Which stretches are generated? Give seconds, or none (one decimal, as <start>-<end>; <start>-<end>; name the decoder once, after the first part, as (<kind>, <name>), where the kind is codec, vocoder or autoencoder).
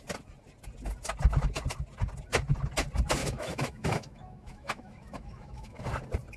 3.2-5.8 (autoencoder, DAC-VAE)